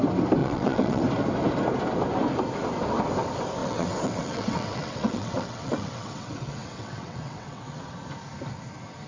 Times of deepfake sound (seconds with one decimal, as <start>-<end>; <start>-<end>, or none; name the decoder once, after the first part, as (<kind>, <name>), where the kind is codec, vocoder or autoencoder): 0.4-1.0 (vocoder, WaveNeXt); 3.6-7.8